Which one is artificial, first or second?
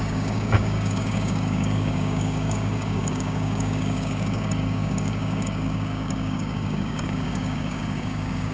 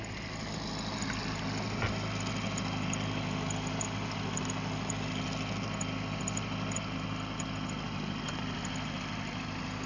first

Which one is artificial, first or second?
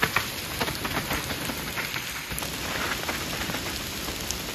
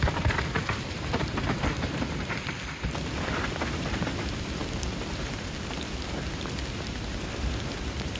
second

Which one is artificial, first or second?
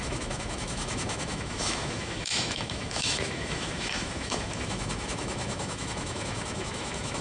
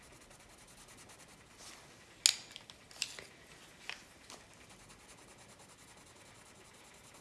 first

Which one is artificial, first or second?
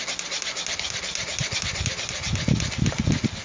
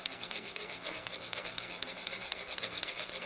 second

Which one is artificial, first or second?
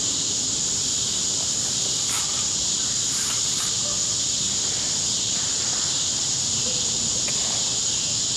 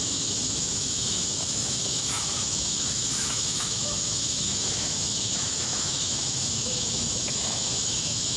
second